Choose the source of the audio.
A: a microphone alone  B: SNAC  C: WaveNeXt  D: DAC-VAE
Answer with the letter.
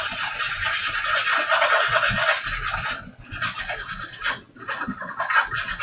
A